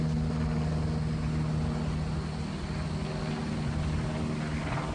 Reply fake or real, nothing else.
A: real